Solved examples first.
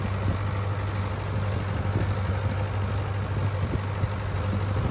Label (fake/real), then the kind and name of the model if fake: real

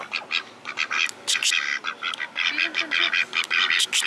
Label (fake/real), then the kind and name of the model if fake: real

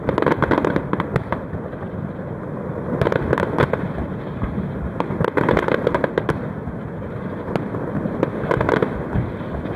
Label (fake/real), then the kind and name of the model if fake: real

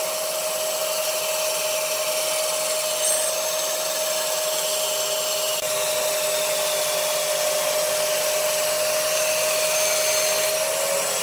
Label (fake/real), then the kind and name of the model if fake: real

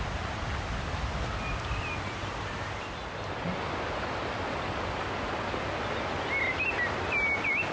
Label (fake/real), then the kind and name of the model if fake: real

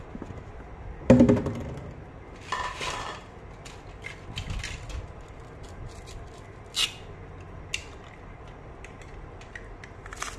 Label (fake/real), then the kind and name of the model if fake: real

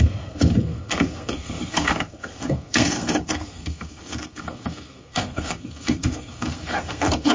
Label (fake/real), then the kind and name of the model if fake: fake, codec, SNAC